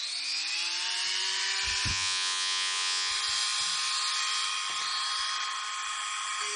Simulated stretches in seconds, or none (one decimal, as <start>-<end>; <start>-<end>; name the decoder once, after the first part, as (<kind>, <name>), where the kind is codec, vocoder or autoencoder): 1.9-3.1 (vocoder, Vocos)